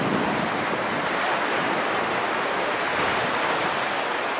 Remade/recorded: recorded